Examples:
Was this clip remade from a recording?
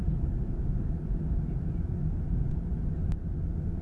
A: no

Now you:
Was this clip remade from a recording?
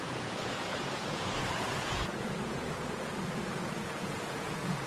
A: yes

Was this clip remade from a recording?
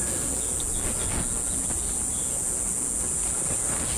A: no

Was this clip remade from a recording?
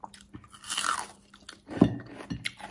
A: no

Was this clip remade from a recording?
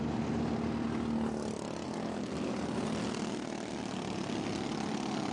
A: no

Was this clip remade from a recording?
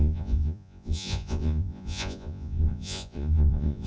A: yes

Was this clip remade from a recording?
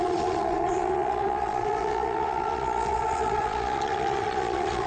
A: yes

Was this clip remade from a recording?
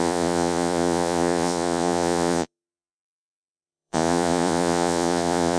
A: yes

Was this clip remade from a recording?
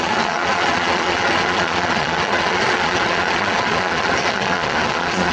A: yes